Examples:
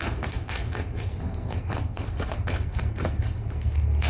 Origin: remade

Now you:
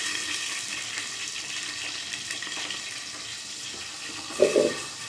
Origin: recorded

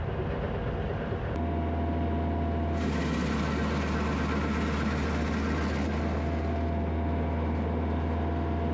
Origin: recorded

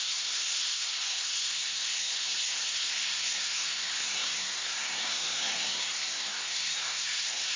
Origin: remade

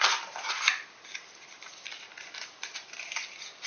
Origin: recorded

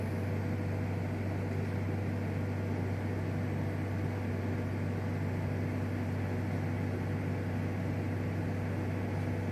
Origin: recorded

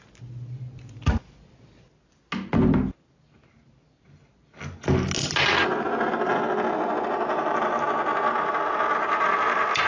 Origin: recorded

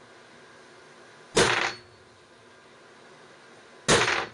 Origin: recorded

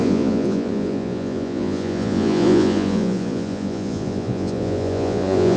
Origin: remade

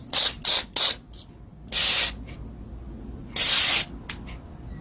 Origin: recorded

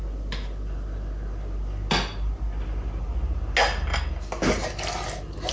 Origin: recorded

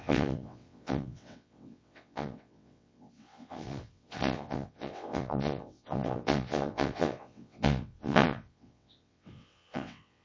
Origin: remade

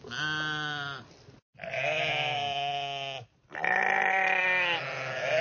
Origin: recorded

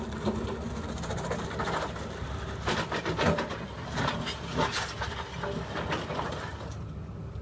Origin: recorded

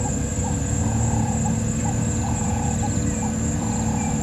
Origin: remade